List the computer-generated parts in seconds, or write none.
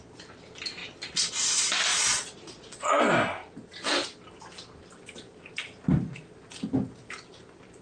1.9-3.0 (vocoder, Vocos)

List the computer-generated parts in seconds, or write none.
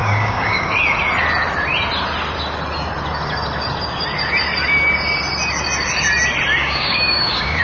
0.0-0.7 (codec, DAC); 6.6-7.6